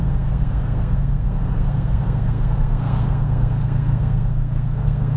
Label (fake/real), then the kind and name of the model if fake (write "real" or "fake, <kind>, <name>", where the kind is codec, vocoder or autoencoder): fake, codec, SNAC